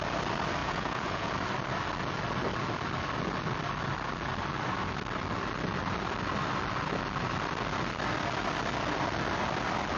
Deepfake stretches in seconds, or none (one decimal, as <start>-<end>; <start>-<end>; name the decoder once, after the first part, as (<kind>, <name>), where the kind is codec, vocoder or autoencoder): 0.6-1.3 (vocoder, Vocos)